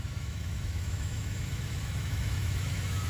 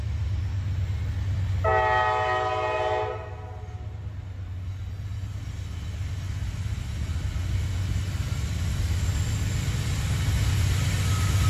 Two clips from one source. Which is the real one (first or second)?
second